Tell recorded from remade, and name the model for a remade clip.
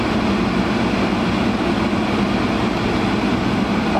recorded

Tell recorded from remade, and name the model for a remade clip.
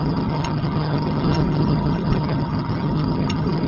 remade, vocoder, HiFi-GAN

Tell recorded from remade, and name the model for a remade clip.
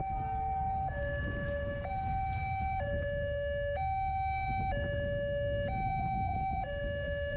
recorded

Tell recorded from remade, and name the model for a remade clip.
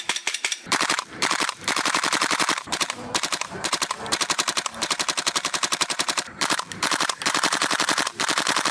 remade, vocoder, BigVGAN v2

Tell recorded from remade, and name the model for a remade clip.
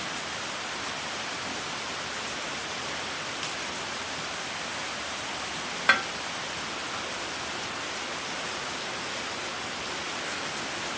recorded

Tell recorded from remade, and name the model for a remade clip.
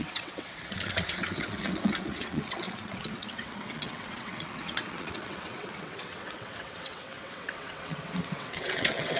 remade, vocoder, WaveNeXt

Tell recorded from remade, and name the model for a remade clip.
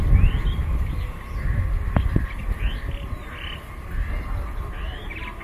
recorded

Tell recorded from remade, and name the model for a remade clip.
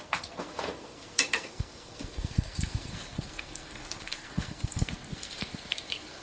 remade, codec, SNAC